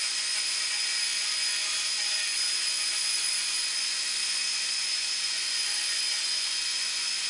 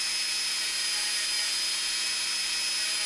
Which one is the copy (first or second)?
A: first